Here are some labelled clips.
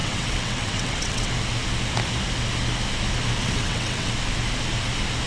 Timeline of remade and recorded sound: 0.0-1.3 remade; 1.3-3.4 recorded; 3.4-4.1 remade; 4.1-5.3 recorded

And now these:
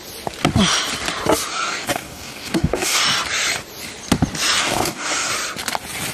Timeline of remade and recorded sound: 0.0-1.5 recorded; 1.5-3.0 remade; 3.0-4.6 recorded; 4.6-5.3 remade; 5.3-6.1 recorded

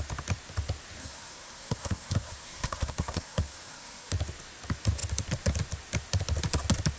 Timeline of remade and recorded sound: 0.0-1.0 recorded; 1.0-4.1 remade; 4.1-7.0 recorded